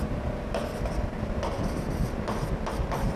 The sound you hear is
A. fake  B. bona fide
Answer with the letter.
B